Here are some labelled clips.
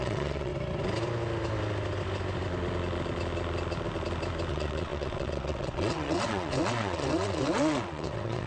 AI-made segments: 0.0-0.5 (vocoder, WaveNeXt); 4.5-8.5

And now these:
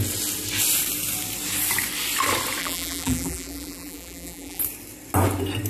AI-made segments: 2.6-4.6 (vocoder, BigVGAN v2)

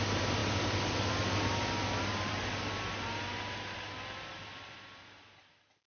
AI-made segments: none